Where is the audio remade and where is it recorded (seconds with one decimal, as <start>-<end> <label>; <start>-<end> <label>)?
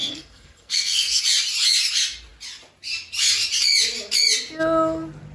0.0-1.2 remade; 1.2-5.3 recorded